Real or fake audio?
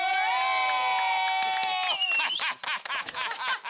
real